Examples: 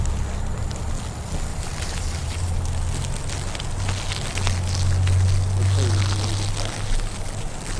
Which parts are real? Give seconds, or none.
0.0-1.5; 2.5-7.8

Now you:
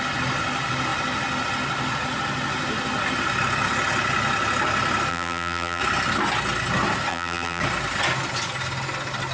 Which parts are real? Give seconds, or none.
0.0-5.1; 5.8-7.1; 7.6-9.3

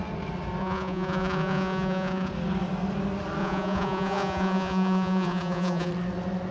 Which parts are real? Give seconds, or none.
0.0-0.6; 2.3-3.4; 5.9-6.5